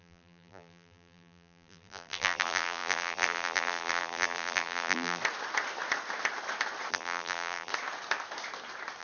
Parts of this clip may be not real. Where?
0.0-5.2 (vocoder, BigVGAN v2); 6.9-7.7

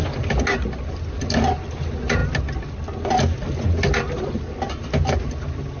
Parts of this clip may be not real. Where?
none